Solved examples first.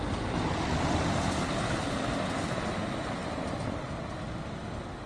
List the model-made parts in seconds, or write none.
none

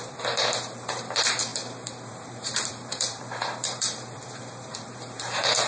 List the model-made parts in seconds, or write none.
0.0-5.7